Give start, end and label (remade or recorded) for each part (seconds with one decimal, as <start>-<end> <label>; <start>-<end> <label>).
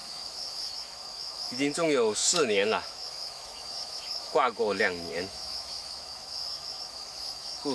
0.0-7.7 remade